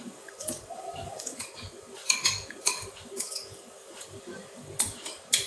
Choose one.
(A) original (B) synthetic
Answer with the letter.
B